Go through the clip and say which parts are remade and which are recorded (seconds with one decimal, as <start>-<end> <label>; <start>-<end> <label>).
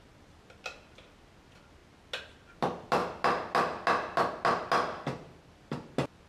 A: 0.0-6.3 recorded